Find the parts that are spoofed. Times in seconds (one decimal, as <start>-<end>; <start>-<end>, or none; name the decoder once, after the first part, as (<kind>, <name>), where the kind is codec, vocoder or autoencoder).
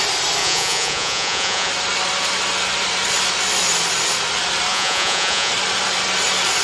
0.4-1.7 (vocoder, Vocos); 4.7-5.5